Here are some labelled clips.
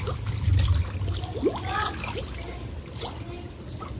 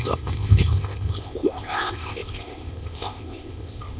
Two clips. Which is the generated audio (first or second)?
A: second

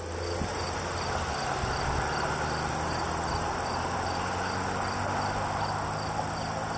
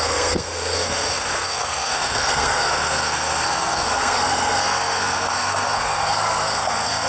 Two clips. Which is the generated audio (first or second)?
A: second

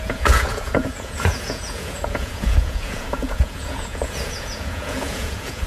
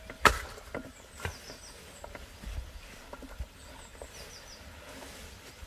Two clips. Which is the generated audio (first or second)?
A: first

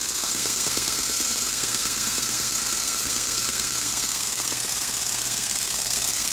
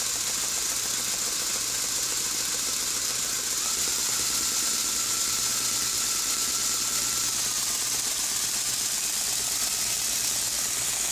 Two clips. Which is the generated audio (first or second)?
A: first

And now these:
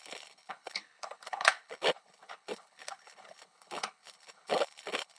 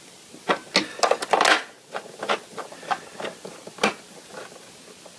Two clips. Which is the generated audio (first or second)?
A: first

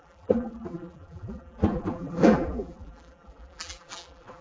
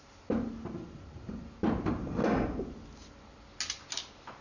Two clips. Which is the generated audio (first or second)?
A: first